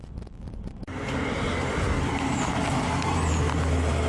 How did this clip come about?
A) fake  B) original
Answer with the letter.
B